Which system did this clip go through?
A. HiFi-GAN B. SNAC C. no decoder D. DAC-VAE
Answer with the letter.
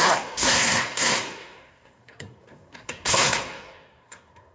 B